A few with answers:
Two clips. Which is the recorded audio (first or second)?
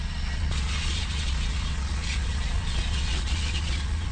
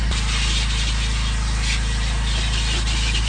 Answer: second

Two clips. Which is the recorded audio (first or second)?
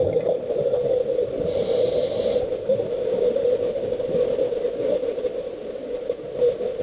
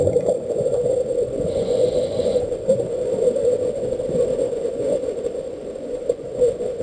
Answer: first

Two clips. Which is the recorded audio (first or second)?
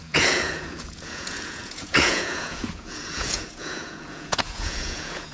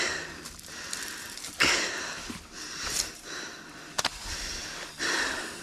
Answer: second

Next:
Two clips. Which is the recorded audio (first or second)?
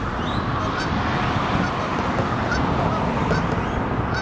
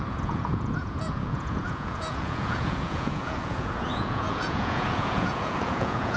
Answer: first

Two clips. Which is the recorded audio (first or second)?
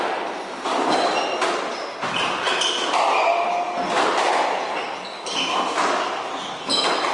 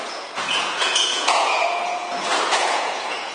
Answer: first